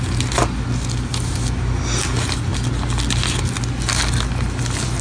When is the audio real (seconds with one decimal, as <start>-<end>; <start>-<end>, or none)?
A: 0.0-5.0